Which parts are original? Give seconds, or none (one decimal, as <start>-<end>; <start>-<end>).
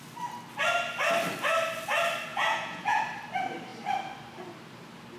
0.0-2.3; 3.0-5.2